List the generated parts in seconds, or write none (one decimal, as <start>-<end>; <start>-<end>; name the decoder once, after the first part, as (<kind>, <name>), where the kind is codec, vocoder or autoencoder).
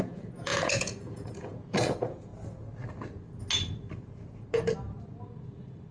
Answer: 0.0-2.3 (vocoder, Vocos)